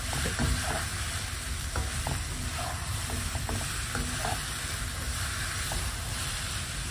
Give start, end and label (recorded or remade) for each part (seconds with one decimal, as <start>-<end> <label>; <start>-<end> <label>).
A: 0.0-6.9 recorded